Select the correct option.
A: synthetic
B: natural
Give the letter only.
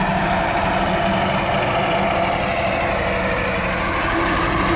B